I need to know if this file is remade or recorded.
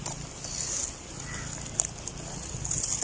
recorded